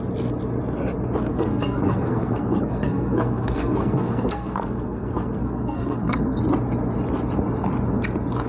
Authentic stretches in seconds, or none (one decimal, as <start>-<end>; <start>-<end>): 0.0-1.3; 6.4-8.5